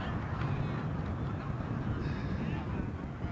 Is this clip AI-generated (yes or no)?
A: no